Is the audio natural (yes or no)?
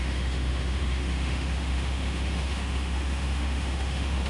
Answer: no